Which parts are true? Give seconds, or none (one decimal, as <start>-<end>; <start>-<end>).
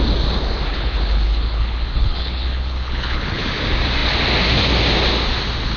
0.0-0.7; 3.4-5.8